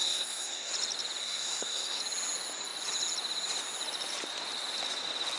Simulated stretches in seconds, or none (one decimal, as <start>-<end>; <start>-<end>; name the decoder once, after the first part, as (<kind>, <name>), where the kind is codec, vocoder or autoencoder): 0.0-0.7 (codec, SNAC); 1.2-2.0